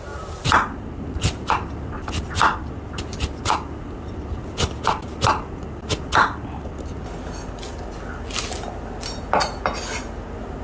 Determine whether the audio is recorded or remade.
recorded